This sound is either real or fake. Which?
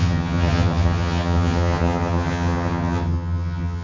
fake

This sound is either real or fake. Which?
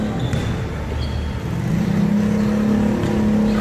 real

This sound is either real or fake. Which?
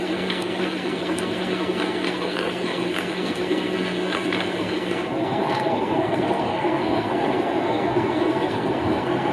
fake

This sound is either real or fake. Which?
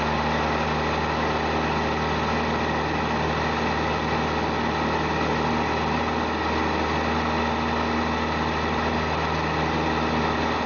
real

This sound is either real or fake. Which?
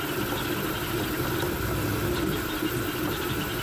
real